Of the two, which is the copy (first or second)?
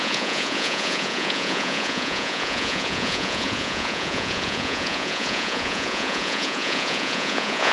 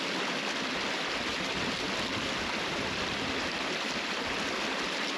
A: first